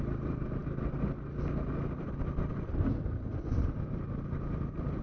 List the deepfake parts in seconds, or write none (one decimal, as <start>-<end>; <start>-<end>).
0.0-0.6; 3.6-5.0